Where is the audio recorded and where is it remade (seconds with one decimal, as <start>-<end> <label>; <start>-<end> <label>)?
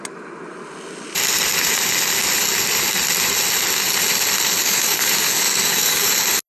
0.0-4.6 recorded; 4.6-6.1 remade; 6.1-6.5 recorded